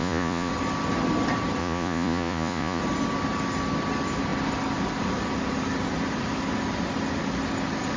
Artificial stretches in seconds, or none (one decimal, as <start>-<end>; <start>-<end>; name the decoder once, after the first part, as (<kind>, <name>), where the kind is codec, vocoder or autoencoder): 0.0-0.5 (vocoder, Vocos); 1.6-2.8